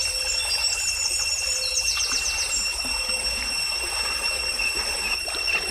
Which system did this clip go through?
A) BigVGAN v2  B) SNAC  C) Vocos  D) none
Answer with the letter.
D